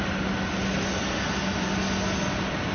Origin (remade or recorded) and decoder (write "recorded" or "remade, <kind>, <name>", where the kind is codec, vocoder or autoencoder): recorded